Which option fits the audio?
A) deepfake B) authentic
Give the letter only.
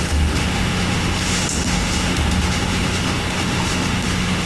A